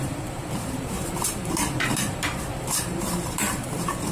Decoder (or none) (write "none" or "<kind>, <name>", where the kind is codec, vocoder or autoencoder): vocoder, BigVGAN v2